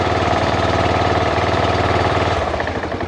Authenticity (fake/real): fake